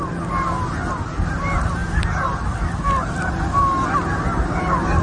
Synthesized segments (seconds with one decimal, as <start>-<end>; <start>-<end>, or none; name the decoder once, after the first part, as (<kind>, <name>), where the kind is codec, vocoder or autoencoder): none